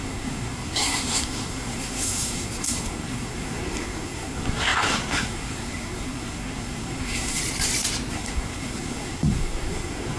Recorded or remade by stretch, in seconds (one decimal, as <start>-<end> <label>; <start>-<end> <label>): 0.0-7.4 remade; 7.4-8.1 recorded; 8.1-10.2 remade